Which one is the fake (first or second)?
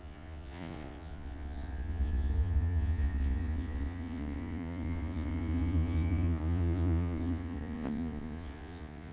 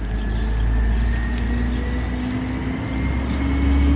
first